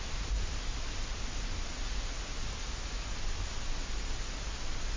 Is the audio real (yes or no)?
yes